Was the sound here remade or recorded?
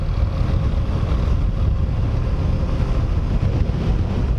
recorded